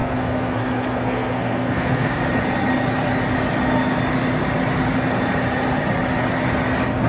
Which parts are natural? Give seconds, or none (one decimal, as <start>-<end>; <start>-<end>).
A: 2.2-7.1

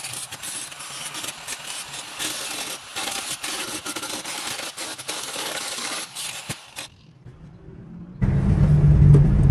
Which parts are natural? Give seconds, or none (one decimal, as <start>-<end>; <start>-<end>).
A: 0.0-4.9; 6.2-9.5